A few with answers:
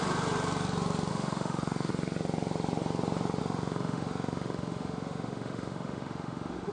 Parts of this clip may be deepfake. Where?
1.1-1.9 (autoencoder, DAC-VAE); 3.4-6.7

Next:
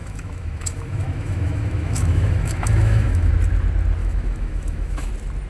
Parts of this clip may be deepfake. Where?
0.0-3.3 (autoencoder, DAC-VAE); 4.0-5.1

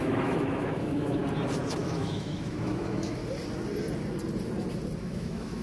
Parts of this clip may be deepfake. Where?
0.0-1.2 (autoencoder, DAC-VAE); 1.8-3.2; 5.0-5.6

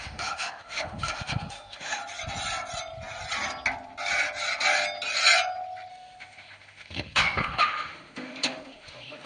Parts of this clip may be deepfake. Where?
0.0-2.0 (autoencoder, DAC-VAE); 5.9-9.3

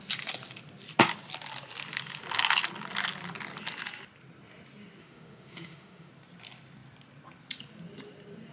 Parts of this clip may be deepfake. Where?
5.0-6.1 (autoencoder, DAC-VAE)

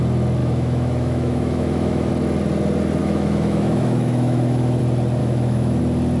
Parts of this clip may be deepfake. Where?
0.4-2.1 (autoencoder, DAC-VAE); 3.0-4.8; 5.2-5.8

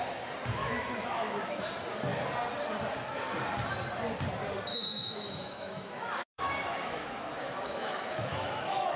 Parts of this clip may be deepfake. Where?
0.6-1.6 (autoencoder, DAC-VAE); 4.7-9.0

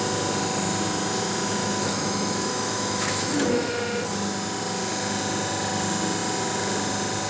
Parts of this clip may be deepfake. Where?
1.6-3.7 (autoencoder, DAC-VAE)